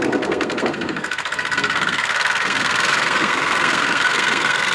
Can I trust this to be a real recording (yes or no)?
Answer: no